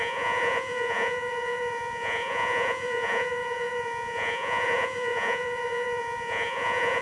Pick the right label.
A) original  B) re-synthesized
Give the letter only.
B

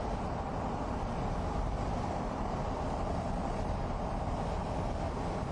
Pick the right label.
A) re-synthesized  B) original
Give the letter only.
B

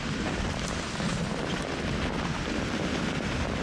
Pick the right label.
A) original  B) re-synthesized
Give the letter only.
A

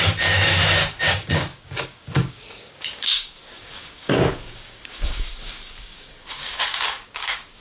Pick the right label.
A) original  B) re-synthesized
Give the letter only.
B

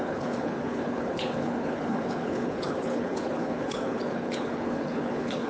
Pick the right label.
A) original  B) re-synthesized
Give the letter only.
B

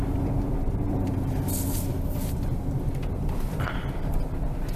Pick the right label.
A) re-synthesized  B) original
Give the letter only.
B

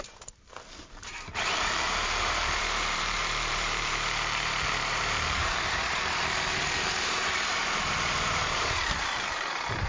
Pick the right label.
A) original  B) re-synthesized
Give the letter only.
B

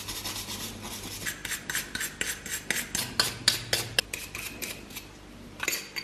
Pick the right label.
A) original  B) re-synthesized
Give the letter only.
A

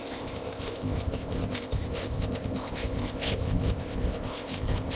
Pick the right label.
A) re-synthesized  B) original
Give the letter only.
A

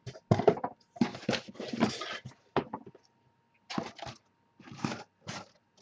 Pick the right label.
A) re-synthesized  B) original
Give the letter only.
B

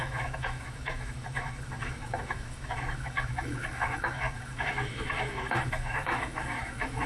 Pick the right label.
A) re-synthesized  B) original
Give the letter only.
A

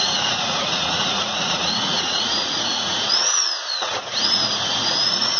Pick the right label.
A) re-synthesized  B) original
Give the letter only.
A